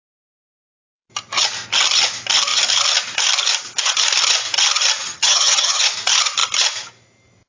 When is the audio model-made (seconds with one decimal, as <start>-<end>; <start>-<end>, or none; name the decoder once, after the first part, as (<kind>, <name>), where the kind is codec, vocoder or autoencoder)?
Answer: 5.0-5.8 (vocoder, HiFi-GAN)